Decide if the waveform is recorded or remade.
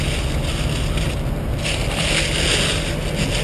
recorded